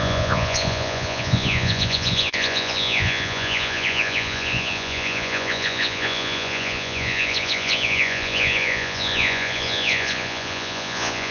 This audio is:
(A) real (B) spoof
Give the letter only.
B